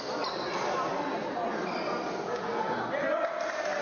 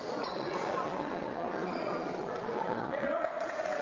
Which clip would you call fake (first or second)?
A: second